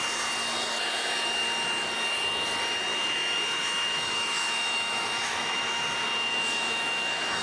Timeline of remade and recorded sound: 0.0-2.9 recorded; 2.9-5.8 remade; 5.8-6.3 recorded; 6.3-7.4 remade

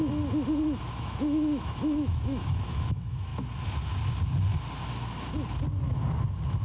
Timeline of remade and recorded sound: 0.0-0.8 recorded; 0.8-3.3 remade; 3.3-6.6 recorded